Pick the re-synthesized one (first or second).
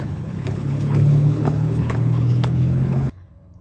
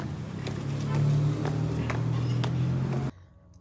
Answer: first